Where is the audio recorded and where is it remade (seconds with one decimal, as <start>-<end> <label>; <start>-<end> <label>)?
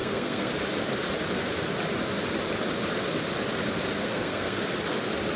0.0-0.5 remade; 0.5-4.0 recorded; 4.0-4.6 remade; 4.6-5.4 recorded